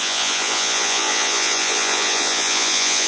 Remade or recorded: remade